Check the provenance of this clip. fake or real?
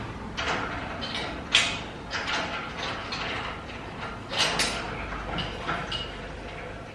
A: real